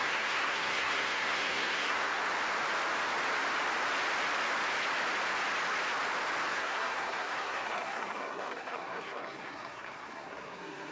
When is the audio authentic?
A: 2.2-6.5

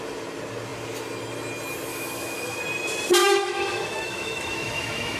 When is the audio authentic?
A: 0.0-1.9; 2.6-3.2